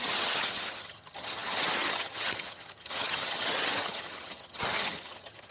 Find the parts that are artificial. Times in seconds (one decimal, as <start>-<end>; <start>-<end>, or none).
0.0-5.5